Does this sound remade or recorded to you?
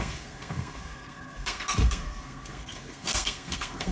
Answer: remade